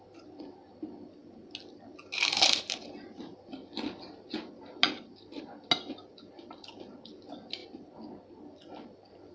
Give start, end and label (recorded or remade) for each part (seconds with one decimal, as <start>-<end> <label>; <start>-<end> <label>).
0.0-9.3 recorded